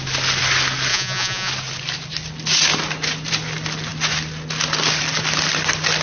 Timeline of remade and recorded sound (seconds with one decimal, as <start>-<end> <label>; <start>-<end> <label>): 0.0-0.9 recorded; 0.9-1.5 remade; 1.5-6.0 recorded

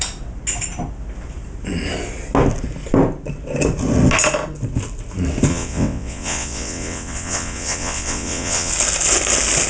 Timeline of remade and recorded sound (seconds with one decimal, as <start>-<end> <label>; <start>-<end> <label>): 0.0-5.5 recorded; 5.5-8.7 remade; 8.7-9.7 recorded

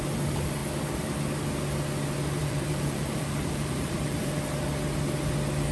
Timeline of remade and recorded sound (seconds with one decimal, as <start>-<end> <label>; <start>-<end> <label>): 0.0-2.4 recorded; 2.4-4.7 remade; 4.7-5.7 recorded